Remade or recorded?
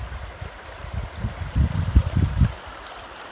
remade